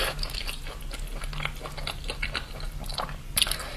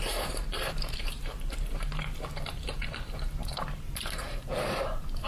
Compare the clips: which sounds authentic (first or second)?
first